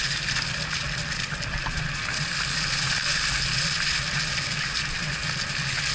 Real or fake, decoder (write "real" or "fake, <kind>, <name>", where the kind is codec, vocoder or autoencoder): real